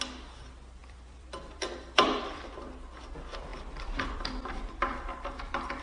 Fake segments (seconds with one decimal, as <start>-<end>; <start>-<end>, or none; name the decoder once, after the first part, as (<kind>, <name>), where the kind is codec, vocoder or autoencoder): 0.8-2.5 (vocoder, BigVGAN v2); 3.5-5.8